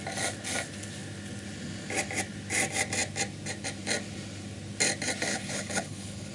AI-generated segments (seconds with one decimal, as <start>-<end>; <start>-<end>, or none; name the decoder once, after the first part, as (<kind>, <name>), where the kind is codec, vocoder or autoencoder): 5.3-6.3 (codec, HILCodec)